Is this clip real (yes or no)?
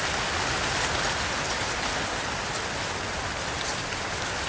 yes